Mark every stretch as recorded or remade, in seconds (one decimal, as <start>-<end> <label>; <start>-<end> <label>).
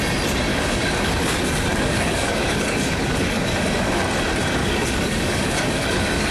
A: 0.0-0.5 recorded; 0.5-1.1 remade; 1.1-1.7 recorded; 1.7-4.0 remade; 4.0-4.6 recorded; 4.6-6.3 remade